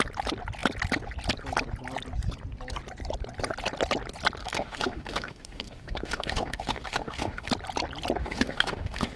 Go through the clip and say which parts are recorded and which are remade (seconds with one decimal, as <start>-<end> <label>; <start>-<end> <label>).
0.0-4.4 recorded; 4.4-7.5 remade; 7.5-8.2 recorded; 8.2-9.2 remade